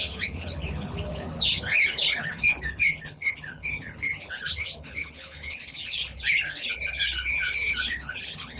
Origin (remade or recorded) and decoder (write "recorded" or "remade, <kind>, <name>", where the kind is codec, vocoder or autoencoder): remade, codec, HILCodec